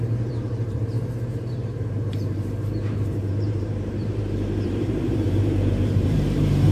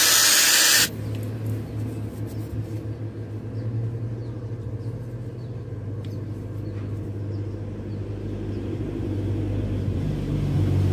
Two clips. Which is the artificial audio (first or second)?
first